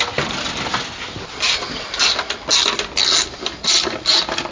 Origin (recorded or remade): recorded